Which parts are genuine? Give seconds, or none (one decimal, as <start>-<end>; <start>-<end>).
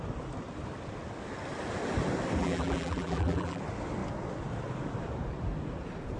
0.0-2.4; 3.6-6.2